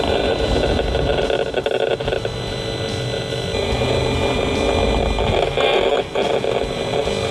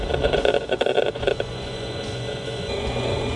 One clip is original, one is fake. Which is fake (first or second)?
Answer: second